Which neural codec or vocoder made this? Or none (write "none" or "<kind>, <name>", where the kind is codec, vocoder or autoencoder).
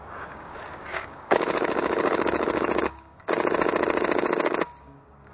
codec, DAC